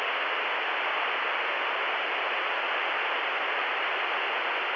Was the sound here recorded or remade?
recorded